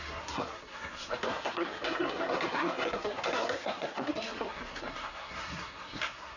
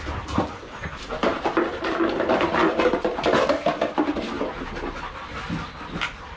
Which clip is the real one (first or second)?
second